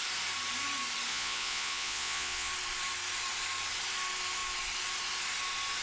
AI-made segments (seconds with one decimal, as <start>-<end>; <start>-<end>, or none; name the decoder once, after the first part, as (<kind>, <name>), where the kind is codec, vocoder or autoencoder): 1.1-2.5 (vocoder, Vocos)